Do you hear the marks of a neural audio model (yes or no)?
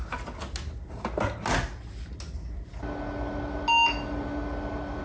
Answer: no